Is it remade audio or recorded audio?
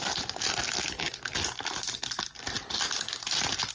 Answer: recorded